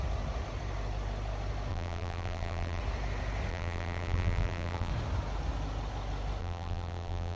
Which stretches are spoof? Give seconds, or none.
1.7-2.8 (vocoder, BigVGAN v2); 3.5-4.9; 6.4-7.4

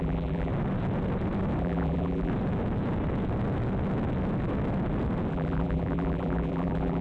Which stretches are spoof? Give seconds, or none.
0.0-0.5 (vocoder, BigVGAN v2); 1.6-2.3; 5.3-7.0